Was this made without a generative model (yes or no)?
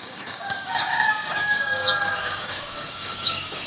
no